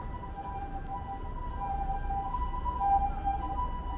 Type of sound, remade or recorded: recorded